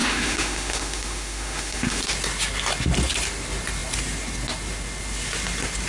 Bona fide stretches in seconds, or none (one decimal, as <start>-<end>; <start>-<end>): 2.0-5.9